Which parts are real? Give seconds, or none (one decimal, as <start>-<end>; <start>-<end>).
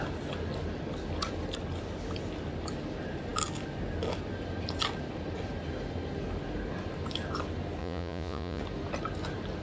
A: 0.0-7.8; 8.6-9.6